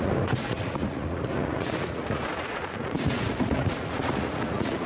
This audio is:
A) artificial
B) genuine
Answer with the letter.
A